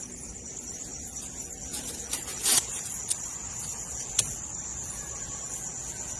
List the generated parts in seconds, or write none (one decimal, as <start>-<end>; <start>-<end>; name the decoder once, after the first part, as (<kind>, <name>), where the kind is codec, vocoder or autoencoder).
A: 1.7-2.7 (vocoder, Vocos); 3.7-4.3; 4.7-6.2